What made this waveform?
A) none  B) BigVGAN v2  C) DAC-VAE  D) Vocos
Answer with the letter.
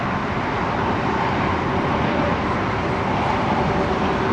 A